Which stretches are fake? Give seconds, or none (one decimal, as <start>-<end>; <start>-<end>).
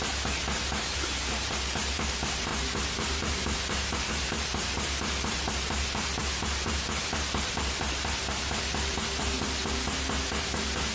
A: 0.0-10.9